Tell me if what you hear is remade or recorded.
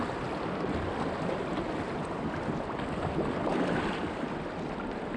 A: recorded